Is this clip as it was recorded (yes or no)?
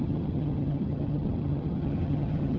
no